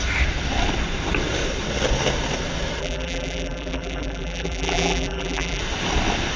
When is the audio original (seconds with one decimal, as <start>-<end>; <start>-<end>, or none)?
0.0-2.8; 5.6-6.4